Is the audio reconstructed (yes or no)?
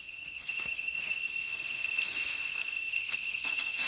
yes